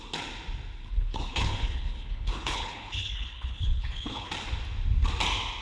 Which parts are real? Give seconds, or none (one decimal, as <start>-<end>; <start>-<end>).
0.0-0.9; 4.3-5.6